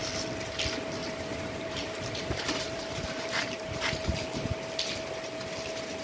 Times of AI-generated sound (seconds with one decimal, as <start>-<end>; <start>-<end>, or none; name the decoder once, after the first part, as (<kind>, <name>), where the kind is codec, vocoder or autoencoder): 1.0-4.6 (vocoder, BigVGAN v2)